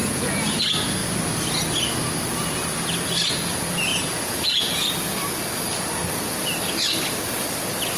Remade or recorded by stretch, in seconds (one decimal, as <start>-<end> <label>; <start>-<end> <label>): 0.0-0.6 remade; 0.6-3.9 recorded; 3.9-4.9 remade; 4.9-8.0 recorded